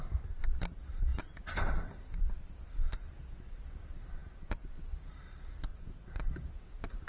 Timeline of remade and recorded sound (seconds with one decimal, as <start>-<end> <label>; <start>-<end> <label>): 0.0-4.2 recorded; 4.2-4.7 remade; 4.7-5.7 recorded; 5.7-6.3 remade; 6.3-7.1 recorded